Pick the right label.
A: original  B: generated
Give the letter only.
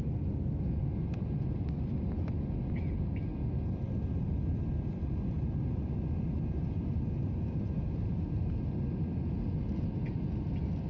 A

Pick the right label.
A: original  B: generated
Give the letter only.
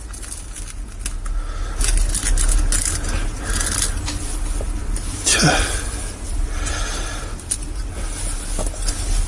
A